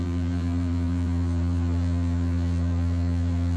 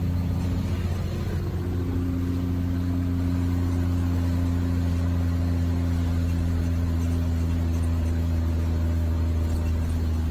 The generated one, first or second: first